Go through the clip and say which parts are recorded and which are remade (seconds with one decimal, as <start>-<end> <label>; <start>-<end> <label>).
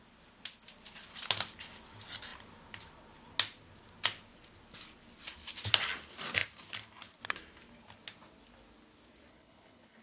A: 0.0-9.3 recorded; 9.3-10.0 remade